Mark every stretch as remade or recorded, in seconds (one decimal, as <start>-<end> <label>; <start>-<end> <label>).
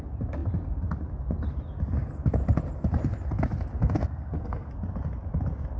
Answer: 0.0-3.8 recorded; 3.8-4.7 remade; 4.7-5.8 recorded